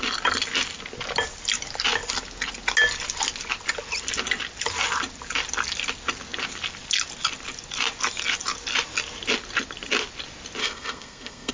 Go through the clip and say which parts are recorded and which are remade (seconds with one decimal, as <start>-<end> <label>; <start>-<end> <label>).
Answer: 0.0-10.6 recorded; 10.6-11.5 remade